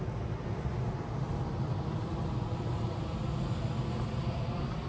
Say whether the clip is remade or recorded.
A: recorded